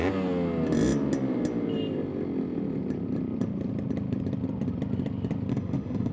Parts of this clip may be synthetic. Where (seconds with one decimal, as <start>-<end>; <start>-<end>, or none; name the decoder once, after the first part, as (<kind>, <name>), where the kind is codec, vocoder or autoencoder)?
5.5-6.1 (autoencoder, DAC-VAE)

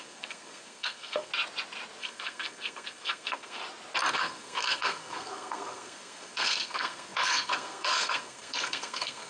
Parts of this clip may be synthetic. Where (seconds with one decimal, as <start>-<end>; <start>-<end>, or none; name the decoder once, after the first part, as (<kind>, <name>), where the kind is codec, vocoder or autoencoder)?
0.0-1.3 (codec, SNAC); 2.0-3.6; 4.1-9.3